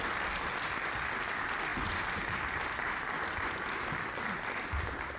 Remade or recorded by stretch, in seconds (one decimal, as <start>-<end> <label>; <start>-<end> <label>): 0.0-5.2 recorded